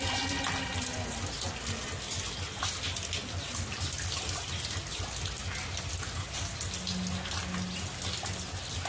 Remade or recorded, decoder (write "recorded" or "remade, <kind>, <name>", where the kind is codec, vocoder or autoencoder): recorded